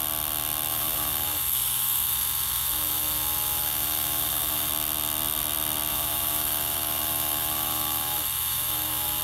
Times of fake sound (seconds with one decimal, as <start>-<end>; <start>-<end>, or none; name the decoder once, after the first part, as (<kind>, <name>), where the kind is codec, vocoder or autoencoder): 0.7-4.7 (autoencoder, DAC-VAE); 5.9-9.2